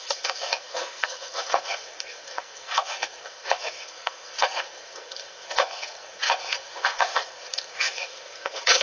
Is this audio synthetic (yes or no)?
yes